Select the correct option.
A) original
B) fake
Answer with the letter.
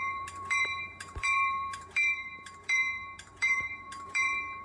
B